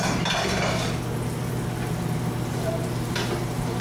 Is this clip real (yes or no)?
yes